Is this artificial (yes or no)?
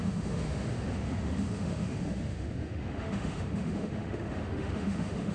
yes